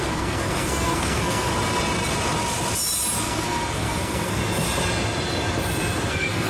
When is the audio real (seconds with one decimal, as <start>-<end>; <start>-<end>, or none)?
1.5-3.2; 4.4-6.1